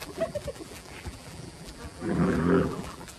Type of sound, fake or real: fake